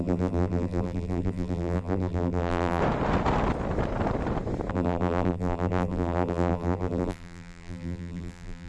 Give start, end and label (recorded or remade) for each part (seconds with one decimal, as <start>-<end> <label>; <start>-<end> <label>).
0.0-2.8 remade; 2.8-4.7 recorded; 4.7-8.7 remade